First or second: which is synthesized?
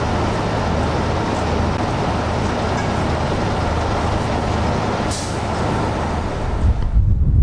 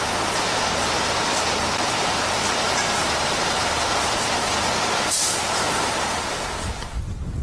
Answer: second